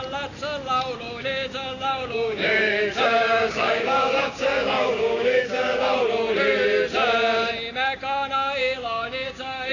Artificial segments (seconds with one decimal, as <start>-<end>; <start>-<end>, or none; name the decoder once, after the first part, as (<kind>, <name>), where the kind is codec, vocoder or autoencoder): 1.0-6.0 (codec, DAC); 8.6-9.7